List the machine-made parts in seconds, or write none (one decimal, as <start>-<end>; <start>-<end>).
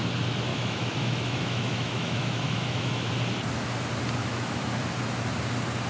0.5-3.1; 4.2-4.8